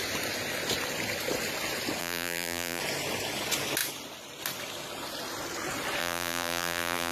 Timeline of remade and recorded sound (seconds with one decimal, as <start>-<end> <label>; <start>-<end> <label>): 0.0-2.0 recorded; 2.0-2.8 remade; 2.8-6.0 recorded; 6.0-7.1 remade